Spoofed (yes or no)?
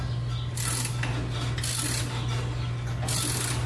no